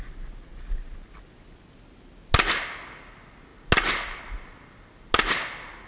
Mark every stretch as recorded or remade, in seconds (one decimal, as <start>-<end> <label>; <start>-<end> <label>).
0.0-5.9 recorded